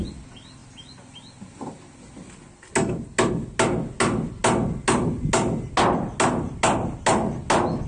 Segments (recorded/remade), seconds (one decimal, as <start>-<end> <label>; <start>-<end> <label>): 0.0-7.9 recorded